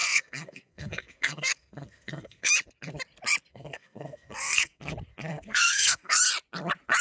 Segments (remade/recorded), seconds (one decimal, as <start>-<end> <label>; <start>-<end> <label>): 0.0-2.5 remade; 2.5-3.5 recorded; 3.5-4.8 remade; 4.8-5.3 recorded; 5.3-6.2 remade; 6.2-7.0 recorded